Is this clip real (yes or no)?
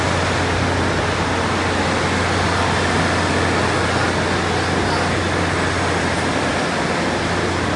yes